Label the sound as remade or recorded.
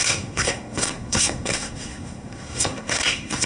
remade